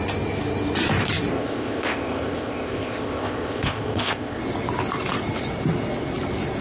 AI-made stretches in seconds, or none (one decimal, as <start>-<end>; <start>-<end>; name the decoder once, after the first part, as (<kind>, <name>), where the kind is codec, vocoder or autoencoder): 1.3-4.4 (codec, ZipCodec)